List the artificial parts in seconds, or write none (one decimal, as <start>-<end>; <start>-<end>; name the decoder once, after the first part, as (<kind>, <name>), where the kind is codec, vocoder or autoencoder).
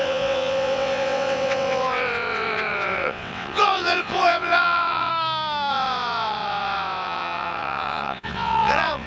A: 0.0-5.1 (vocoder, WaveNeXt); 5.7-9.1